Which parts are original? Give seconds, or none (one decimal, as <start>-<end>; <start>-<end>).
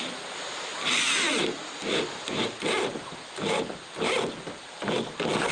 0.0-5.5